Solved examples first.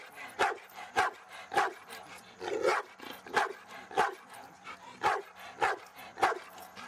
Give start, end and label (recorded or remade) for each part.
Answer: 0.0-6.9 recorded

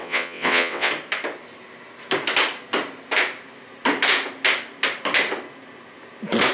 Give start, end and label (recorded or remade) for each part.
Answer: 0.0-0.9 remade; 0.9-6.5 recorded

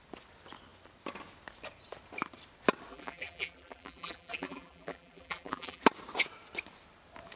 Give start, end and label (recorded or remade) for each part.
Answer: 0.0-2.9 recorded; 2.9-5.8 remade; 5.8-7.4 recorded

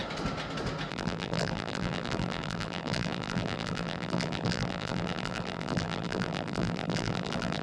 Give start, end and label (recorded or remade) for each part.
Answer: 0.0-0.9 recorded; 0.9-7.6 remade

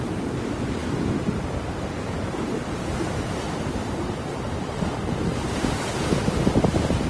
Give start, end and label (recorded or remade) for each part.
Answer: 0.0-7.1 recorded

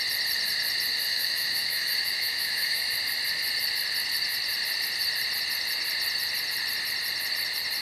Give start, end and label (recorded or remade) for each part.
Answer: 0.0-1.1 recorded; 1.1-2.8 remade; 2.8-7.8 recorded

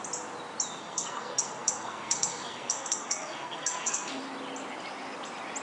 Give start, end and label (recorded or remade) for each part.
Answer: 0.0-0.8 recorded; 0.8-4.2 remade; 4.2-5.6 recorded

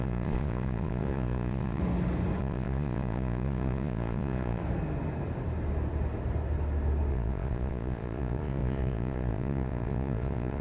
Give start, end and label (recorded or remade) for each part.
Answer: 0.0-1.8 remade; 1.8-2.4 recorded; 2.4-4.6 remade; 4.6-7.1 recorded; 7.1-10.6 remade